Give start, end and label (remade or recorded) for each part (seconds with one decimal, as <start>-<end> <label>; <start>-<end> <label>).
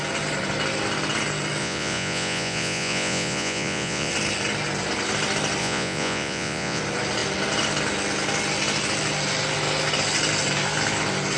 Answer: 0.0-1.6 recorded; 1.6-4.1 remade; 4.1-5.6 recorded; 5.6-6.8 remade; 6.8-11.4 recorded